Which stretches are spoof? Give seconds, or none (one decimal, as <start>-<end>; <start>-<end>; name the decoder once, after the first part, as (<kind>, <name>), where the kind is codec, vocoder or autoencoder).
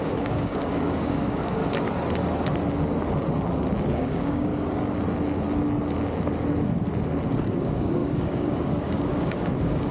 0.0-1.6 (codec, DAC); 3.9-4.5; 7.3-9.9